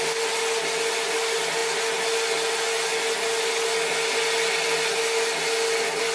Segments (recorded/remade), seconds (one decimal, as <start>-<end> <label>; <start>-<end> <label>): 0.0-6.1 recorded